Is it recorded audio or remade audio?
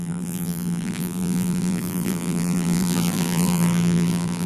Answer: remade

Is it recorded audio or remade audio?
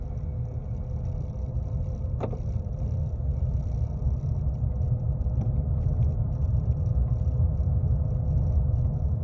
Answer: recorded